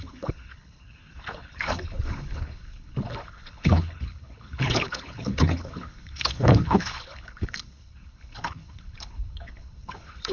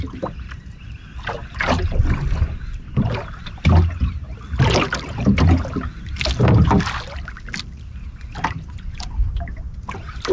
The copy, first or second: first